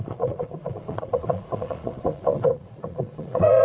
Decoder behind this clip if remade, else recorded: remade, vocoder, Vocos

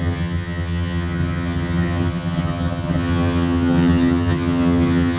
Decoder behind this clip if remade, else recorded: remade, vocoder, HiFi-GAN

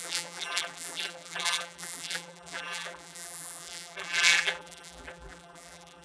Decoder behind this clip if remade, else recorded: remade, vocoder, BigVGAN v2